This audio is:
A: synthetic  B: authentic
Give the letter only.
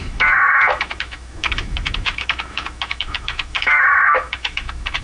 A